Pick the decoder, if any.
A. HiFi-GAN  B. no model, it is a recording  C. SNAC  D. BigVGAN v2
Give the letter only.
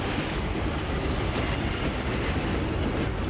B